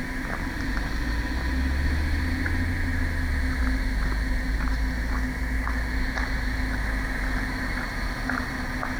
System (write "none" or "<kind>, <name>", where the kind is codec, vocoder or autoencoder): none